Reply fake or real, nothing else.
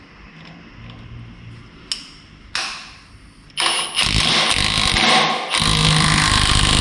real